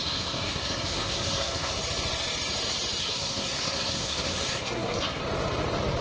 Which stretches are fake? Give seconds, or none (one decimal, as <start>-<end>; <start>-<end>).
0.0-1.8; 3.0-5.2